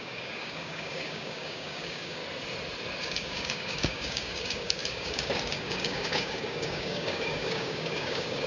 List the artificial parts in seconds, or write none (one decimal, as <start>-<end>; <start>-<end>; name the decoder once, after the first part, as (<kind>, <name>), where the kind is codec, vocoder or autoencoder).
0.0-2.2 (codec, DAC); 3.0-8.5